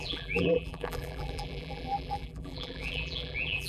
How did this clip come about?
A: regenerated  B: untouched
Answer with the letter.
A